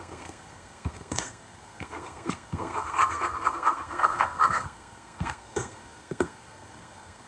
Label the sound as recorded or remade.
remade